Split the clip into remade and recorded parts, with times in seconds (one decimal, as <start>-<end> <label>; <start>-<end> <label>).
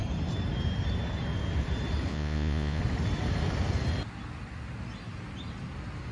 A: 0.0-2.1 recorded; 2.1-2.8 remade; 2.8-6.1 recorded